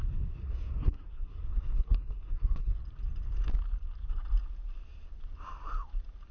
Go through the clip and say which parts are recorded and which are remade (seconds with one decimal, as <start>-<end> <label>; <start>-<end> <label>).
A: 0.0-0.4 recorded; 0.4-2.8 remade; 2.8-6.3 recorded